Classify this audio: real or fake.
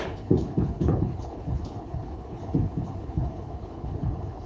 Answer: fake